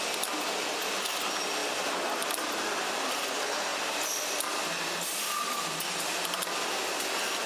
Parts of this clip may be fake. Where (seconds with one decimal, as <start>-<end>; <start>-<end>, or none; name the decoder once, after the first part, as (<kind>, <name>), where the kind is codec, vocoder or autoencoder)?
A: 1.6-3.2 (vocoder, BigVGAN v2); 3.7-5.9